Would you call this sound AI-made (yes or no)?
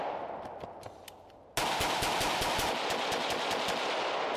no